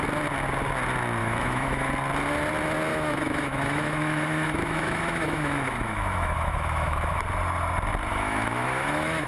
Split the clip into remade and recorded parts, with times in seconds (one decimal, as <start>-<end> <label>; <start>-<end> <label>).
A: 0.0-1.2 recorded; 1.2-1.9 remade; 1.9-2.9 recorded; 2.9-7.2 remade; 7.2-8.1 recorded; 8.1-9.3 remade